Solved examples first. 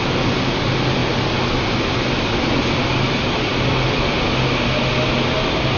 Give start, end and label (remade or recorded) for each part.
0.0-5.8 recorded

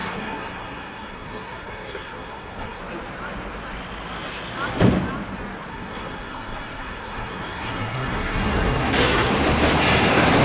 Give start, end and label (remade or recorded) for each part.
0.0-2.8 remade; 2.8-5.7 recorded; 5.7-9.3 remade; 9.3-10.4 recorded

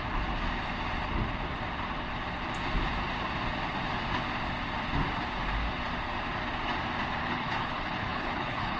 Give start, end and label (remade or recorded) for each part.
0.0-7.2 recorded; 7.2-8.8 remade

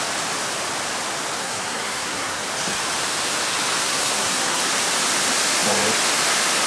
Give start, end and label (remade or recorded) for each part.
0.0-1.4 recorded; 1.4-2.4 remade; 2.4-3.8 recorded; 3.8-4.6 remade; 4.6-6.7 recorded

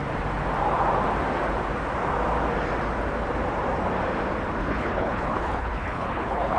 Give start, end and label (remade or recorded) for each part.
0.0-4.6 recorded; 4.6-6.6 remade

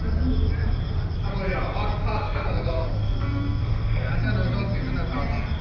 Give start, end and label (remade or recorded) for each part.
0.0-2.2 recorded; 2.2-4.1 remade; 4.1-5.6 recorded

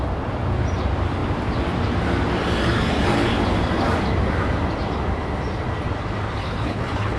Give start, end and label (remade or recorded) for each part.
0.0-6.4 recorded; 6.4-7.2 remade